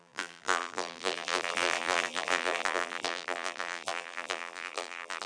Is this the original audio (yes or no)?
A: no